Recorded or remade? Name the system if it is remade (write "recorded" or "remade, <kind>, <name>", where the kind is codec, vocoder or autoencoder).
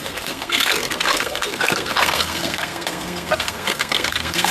remade, codec, SNAC